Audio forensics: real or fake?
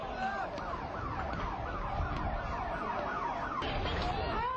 real